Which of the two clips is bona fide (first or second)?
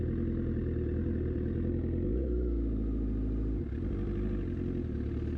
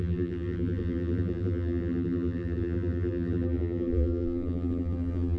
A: first